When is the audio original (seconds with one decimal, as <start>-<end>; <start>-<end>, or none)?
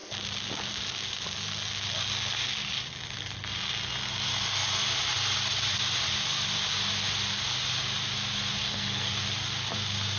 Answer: 0.0-8.6; 9.1-10.2